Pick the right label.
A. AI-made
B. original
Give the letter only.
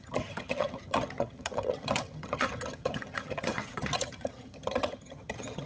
A